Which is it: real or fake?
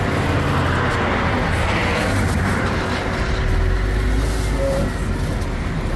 real